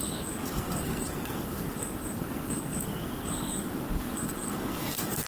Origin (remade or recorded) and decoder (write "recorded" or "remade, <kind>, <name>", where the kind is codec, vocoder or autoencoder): remade, codec, SNAC